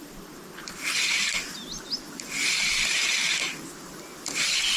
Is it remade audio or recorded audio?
recorded